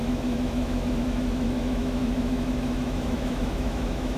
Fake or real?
fake